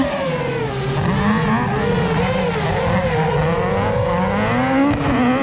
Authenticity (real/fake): real